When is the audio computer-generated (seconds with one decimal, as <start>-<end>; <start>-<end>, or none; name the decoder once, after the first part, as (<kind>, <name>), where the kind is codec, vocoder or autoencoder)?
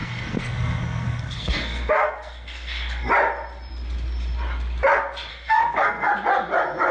0.0-3.1 (codec, SNAC); 5.3-6.1